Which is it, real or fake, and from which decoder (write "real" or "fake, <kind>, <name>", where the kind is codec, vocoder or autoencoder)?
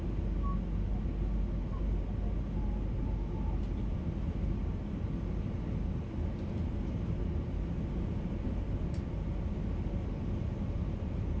real